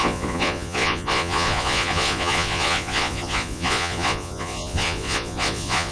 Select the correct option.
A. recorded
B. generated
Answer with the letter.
B